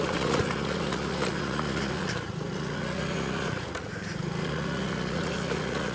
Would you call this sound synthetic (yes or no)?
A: yes